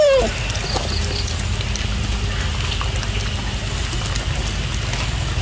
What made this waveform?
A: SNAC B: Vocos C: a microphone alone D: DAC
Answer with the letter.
C